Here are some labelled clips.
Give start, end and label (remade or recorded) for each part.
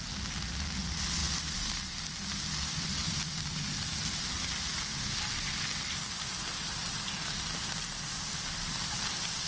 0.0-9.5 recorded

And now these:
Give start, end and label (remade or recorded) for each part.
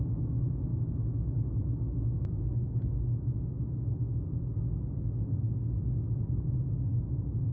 0.0-0.7 remade; 0.7-1.6 recorded; 1.6-7.5 remade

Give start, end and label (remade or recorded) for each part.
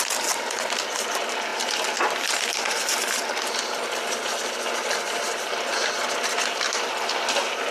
0.0-7.7 recorded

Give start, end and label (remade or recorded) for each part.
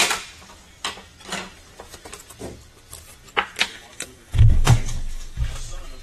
0.0-3.7 recorded; 3.7-5.4 remade; 5.4-6.0 recorded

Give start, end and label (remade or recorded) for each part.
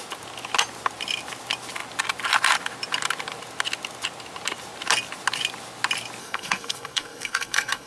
0.0-6.2 recorded; 6.2-7.9 remade